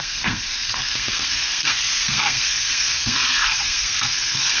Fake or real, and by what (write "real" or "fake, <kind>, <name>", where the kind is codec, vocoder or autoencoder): fake, codec, SNAC